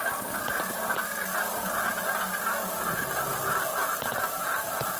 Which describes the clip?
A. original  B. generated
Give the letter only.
A